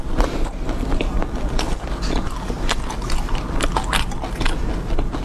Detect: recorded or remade recorded